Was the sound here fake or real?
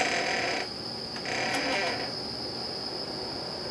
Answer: real